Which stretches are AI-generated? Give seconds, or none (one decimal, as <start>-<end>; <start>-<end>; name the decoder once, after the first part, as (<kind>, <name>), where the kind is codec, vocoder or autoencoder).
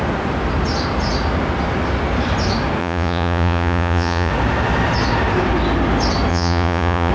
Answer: 2.8-4.3 (vocoder, Vocos); 6.3-7.1